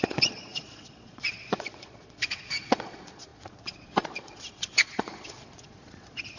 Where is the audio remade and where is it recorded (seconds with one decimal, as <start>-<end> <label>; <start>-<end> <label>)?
0.0-6.4 remade